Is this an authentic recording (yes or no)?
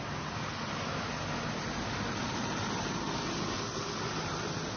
yes